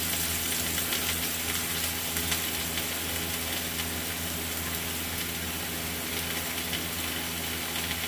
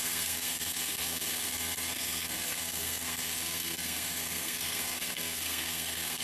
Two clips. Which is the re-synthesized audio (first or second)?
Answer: second